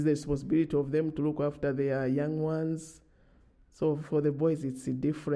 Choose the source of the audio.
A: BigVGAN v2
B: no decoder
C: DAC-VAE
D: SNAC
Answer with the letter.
B